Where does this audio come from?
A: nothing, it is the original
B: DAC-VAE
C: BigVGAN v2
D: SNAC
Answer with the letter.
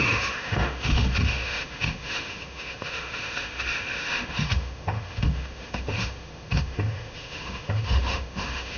B